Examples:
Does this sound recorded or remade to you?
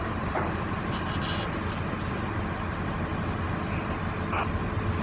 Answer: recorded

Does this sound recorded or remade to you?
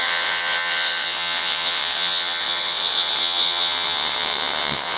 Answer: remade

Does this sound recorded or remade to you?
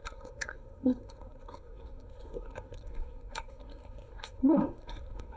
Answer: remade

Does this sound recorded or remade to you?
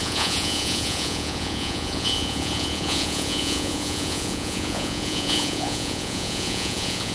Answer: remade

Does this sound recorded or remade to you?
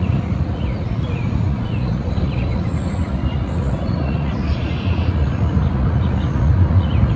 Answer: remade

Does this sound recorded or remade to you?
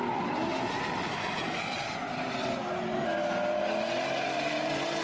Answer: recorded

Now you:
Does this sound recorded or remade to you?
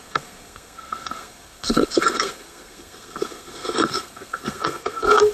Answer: remade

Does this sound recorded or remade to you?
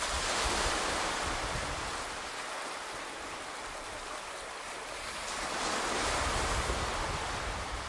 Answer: recorded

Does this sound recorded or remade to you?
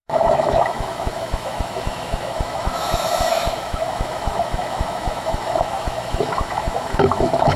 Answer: remade